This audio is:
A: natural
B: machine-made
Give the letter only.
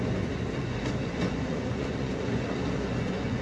B